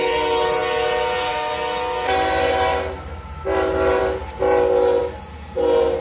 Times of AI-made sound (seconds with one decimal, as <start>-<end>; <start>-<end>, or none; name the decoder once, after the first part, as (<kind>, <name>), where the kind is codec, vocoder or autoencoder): none